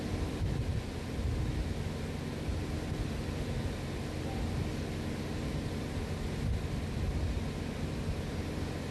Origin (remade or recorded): recorded